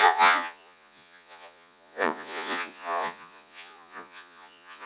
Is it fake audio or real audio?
fake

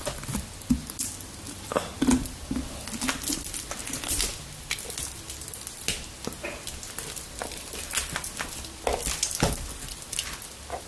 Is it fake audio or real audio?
real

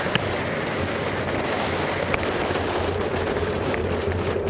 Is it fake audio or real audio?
real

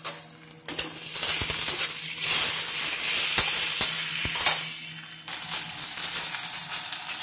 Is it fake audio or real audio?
real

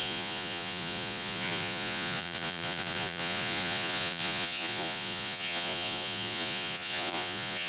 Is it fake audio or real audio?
fake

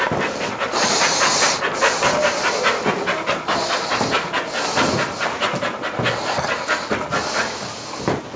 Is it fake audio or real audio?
real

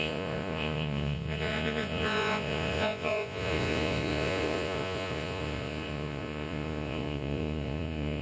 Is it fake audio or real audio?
fake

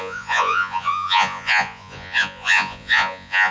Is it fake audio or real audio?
fake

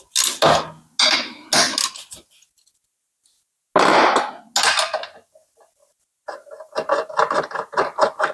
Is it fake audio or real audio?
real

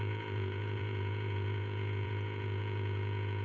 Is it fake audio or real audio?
fake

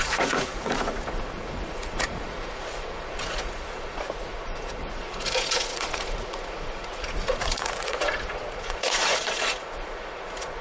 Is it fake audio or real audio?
fake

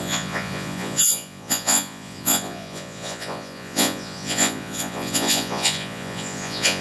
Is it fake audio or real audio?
fake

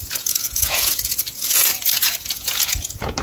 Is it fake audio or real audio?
fake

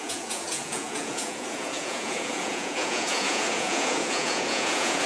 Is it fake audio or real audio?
fake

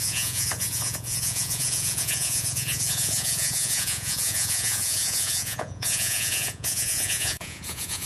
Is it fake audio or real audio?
fake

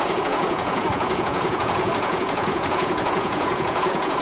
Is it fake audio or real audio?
fake